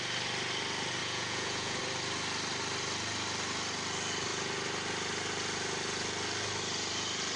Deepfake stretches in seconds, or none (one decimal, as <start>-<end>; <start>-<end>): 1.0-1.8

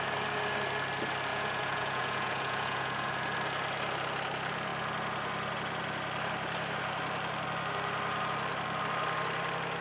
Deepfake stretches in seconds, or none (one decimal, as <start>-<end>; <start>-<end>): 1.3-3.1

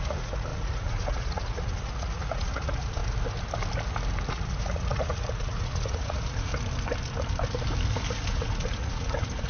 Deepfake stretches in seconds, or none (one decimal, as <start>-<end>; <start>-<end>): 0.0-3.0; 4.3-6.5; 8.3-9.5

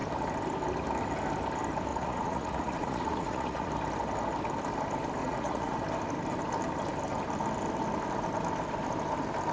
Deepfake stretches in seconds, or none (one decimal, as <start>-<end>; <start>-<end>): 1.9-3.7; 5.2-5.8